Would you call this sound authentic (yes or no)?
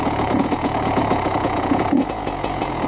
no